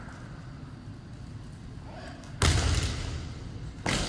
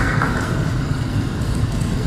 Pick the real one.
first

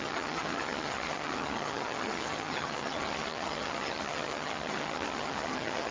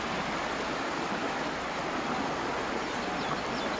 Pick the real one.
second